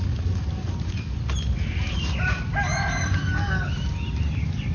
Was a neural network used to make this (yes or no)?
no